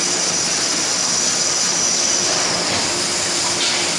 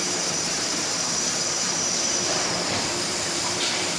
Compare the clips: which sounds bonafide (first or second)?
first